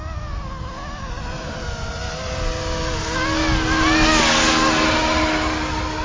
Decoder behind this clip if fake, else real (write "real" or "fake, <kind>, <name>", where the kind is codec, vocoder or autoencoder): real